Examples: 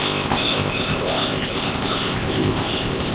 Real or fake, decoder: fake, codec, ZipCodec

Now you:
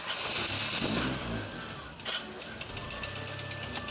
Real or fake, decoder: real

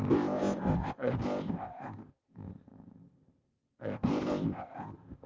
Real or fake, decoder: fake, codec, ZipCodec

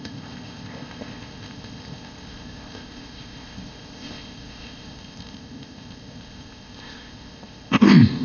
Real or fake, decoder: fake, codec, ZipCodec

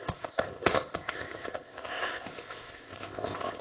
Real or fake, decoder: fake, codec, ZipCodec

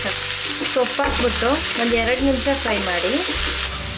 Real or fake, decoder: real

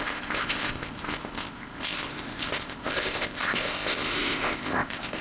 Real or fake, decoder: fake, codec, ZipCodec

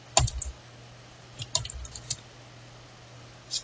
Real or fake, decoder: real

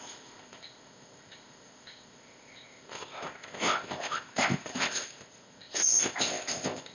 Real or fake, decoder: fake, codec, ZipCodec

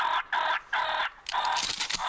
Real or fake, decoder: real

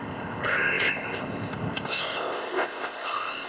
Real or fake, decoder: fake, codec, ZipCodec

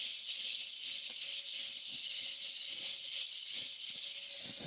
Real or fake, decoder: real